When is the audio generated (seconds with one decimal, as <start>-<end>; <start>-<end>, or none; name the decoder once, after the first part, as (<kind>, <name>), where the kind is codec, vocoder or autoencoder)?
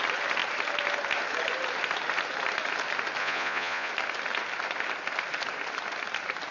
3.2-3.9 (vocoder, Vocos)